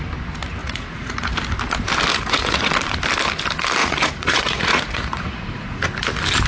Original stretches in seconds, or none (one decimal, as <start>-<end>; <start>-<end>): 0.0-0.6; 1.3-2.1; 2.7-3.8; 5.8-6.5